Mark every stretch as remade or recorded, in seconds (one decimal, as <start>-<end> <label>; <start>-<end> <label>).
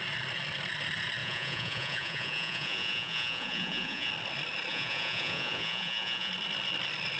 0.0-1.2 recorded; 1.2-4.1 remade; 4.1-4.7 recorded; 4.7-6.3 remade; 6.3-7.2 recorded